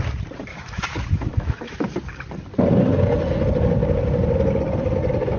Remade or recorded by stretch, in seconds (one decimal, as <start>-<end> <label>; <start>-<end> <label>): 0.0-0.5 recorded; 0.5-1.9 remade; 1.9-5.4 recorded

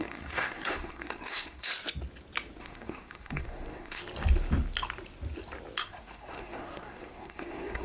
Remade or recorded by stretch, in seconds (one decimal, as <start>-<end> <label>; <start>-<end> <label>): 0.0-1.7 remade; 1.7-2.6 recorded; 2.6-4.0 remade; 4.0-5.8 recorded; 5.8-7.8 remade